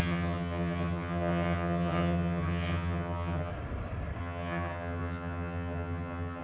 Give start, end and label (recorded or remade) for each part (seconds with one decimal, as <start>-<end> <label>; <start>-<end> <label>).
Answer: 0.0-3.5 remade; 3.5-4.2 recorded; 4.2-6.4 remade